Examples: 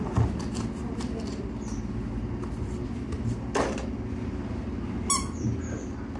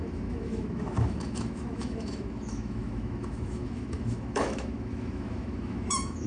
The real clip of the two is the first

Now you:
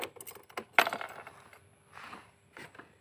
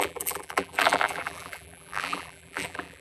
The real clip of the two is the first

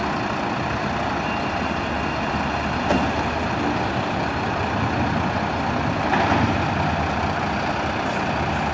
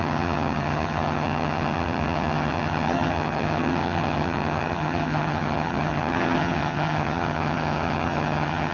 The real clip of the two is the first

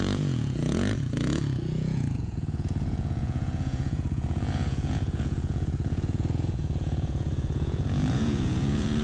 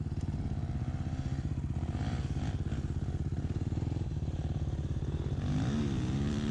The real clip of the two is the second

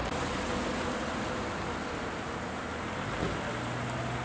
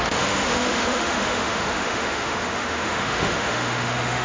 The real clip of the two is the first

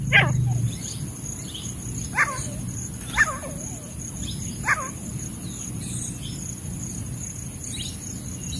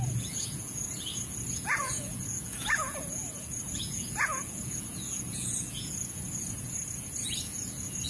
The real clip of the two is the first